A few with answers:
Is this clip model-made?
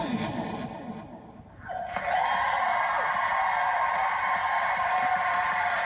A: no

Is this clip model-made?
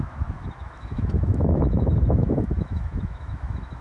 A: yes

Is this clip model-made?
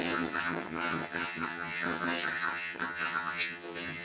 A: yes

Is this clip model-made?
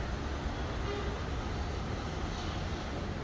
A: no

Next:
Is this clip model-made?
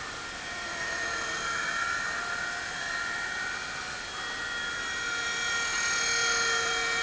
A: no